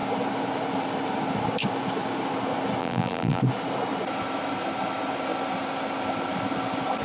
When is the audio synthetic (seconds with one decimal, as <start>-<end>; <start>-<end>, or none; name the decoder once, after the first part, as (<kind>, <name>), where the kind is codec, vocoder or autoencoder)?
2.8-3.4 (vocoder, BigVGAN v2)